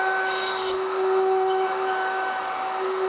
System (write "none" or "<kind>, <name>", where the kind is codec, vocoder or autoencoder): autoencoder, DAC-VAE